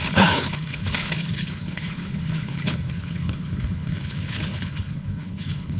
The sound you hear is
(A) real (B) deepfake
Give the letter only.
B